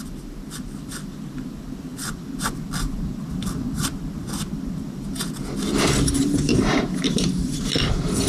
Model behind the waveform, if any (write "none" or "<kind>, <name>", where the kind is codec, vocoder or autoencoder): vocoder, BigVGAN v2